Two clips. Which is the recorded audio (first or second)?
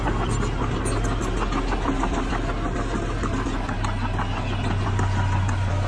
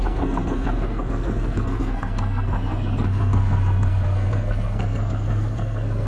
first